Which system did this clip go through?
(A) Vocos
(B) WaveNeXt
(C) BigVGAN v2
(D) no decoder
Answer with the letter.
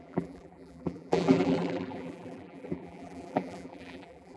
C